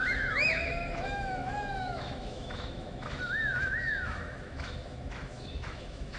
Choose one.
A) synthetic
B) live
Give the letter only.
A